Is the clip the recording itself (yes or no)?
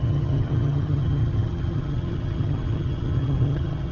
no